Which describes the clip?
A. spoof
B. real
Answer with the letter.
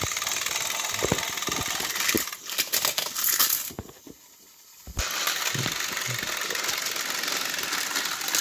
B